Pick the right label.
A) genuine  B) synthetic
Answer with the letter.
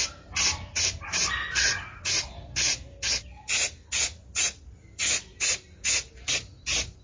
A